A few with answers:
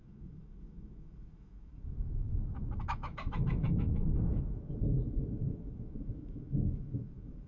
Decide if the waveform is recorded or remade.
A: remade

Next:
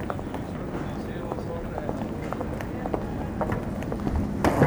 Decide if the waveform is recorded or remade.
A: recorded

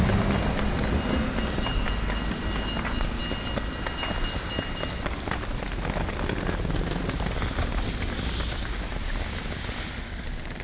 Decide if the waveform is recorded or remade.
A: recorded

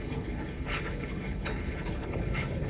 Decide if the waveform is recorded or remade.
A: remade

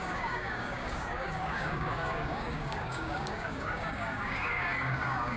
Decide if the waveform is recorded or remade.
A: remade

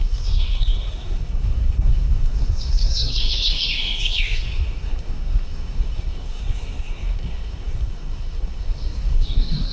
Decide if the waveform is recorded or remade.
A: remade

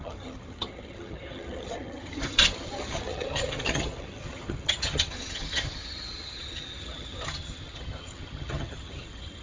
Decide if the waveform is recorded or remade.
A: remade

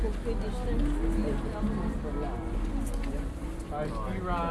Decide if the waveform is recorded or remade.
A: recorded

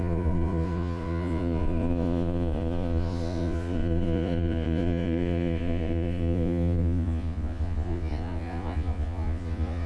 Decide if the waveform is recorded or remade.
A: remade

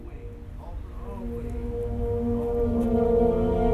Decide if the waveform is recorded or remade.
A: recorded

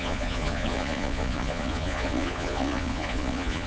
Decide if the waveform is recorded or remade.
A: remade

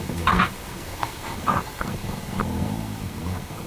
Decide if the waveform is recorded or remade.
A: remade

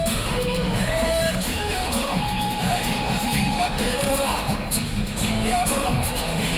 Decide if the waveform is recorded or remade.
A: remade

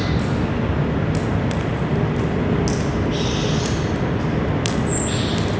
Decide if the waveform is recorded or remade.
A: recorded